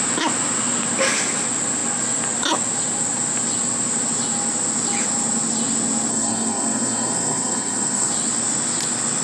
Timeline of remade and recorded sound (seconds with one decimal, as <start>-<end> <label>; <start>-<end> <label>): 0.0-6.1 recorded; 6.1-8.1 remade; 8.1-9.2 recorded